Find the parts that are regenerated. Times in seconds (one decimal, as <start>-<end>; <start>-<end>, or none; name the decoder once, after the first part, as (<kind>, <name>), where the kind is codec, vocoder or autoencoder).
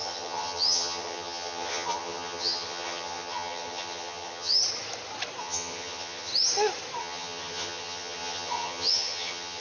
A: 0.0-4.6 (vocoder, HiFi-GAN); 5.4-6.3; 7.0-9.6